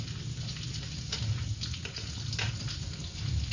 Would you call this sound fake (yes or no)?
no